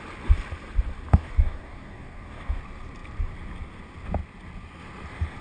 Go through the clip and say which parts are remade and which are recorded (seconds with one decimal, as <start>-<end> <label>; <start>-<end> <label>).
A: 0.0-1.1 recorded; 1.1-2.6 remade; 2.6-5.4 recorded